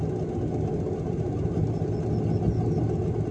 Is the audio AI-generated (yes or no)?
no